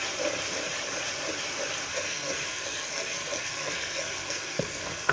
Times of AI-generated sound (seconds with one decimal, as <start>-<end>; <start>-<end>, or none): 1.9-5.1